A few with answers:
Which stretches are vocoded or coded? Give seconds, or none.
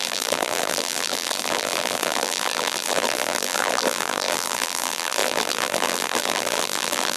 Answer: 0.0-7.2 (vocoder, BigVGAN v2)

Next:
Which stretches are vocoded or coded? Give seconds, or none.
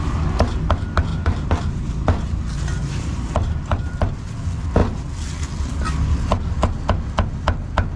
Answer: 1.1-1.9 (vocoder, BigVGAN v2); 2.8-4.1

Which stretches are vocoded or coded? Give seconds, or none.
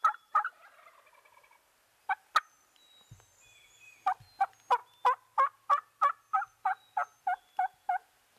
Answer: none